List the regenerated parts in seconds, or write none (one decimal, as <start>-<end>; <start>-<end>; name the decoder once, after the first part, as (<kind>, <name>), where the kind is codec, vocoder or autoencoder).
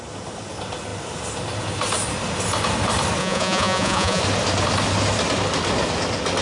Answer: 3.2-4.2 (vocoder, Vocos)